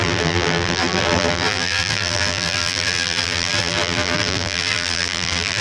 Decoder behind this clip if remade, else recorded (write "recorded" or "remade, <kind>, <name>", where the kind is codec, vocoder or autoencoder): remade, vocoder, BigVGAN v2